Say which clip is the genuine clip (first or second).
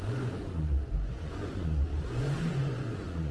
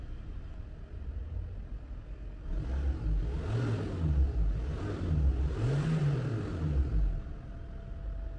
second